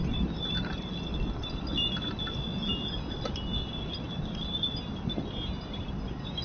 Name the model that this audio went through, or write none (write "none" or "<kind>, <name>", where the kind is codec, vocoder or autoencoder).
none